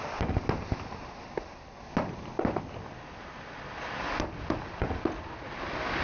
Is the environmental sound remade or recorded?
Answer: recorded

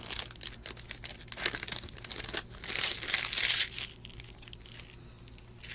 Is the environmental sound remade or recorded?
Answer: recorded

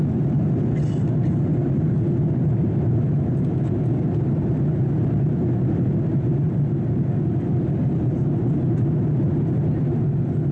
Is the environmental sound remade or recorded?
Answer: recorded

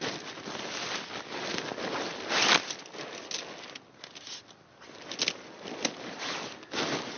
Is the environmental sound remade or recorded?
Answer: recorded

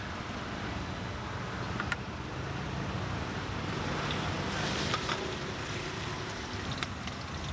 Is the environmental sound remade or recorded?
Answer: recorded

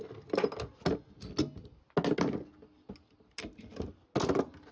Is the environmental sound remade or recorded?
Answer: recorded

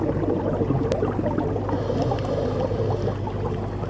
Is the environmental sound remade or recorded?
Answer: recorded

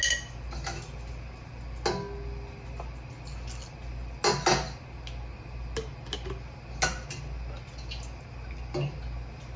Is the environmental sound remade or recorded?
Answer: recorded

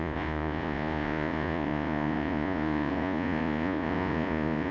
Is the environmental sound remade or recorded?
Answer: remade